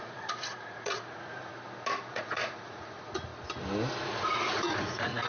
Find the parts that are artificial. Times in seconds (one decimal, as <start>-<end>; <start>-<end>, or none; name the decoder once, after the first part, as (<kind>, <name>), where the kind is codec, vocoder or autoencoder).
0.0-1.5 (vocoder, Vocos); 2.1-3.3; 4.0-5.3